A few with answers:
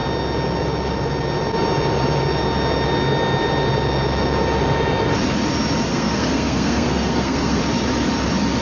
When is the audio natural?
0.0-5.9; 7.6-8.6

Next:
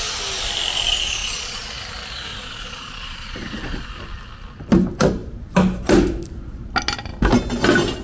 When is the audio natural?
0.0-1.2; 1.7-2.3; 3.9-8.0

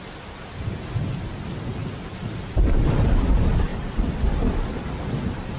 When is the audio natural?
1.8-2.9

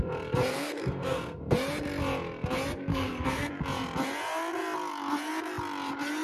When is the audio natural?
0.0-0.5; 1.4-2.9; 3.5-6.2

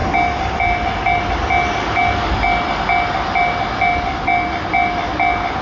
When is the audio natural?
0.0-5.6

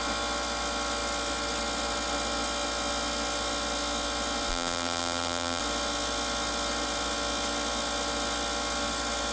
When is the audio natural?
0.0-4.5; 5.6-9.3